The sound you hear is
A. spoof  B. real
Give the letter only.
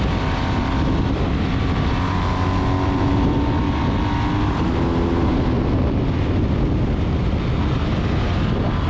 B